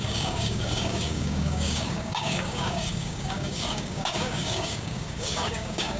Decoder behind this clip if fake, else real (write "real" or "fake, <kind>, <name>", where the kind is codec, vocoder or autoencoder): fake, codec, DAC